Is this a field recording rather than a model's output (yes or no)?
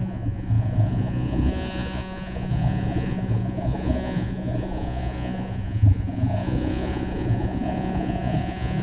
no